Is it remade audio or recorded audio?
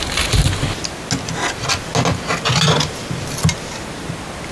recorded